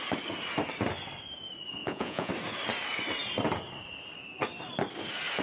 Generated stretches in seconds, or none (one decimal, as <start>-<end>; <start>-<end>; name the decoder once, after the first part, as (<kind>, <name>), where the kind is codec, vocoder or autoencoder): 1.8-2.3 (vocoder, Vocos)